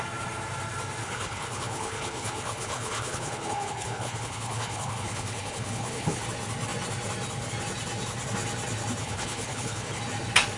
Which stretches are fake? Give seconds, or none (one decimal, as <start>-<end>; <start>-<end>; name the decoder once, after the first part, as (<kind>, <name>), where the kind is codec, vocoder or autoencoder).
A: 1.0-6.2 (codec, HILCodec); 9.0-10.0